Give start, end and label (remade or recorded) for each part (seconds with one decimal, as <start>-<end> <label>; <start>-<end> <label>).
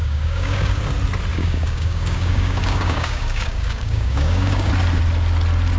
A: 0.0-0.8 remade; 0.8-1.3 recorded; 1.3-4.7 remade; 4.7-5.8 recorded